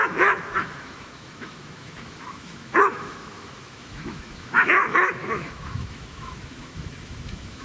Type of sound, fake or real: fake